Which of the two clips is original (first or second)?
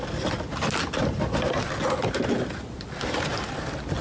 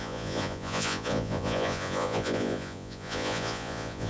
first